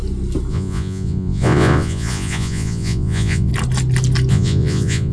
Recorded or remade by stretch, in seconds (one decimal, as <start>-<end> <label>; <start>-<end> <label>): 0.0-0.5 recorded; 0.5-3.5 remade; 3.5-4.3 recorded; 4.3-5.1 remade